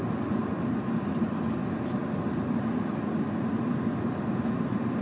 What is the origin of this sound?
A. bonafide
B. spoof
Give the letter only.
A